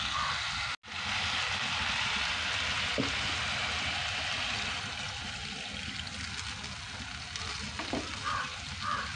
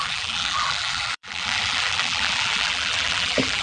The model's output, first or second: second